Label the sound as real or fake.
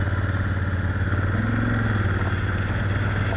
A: real